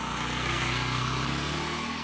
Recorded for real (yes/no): no